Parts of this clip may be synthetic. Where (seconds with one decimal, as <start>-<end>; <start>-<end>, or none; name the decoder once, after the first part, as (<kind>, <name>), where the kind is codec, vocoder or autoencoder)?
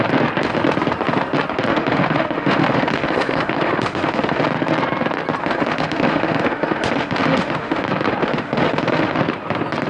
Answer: 1.7-4.4 (autoencoder, DAC-VAE); 5.4-7.8; 8.2-9.2